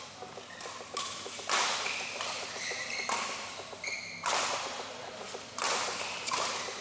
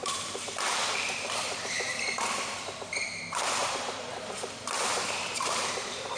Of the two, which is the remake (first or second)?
second